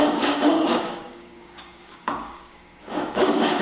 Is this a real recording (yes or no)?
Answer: no